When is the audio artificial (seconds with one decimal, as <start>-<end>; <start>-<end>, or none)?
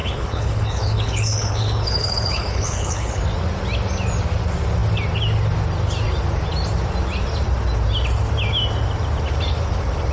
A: 0.0-3.2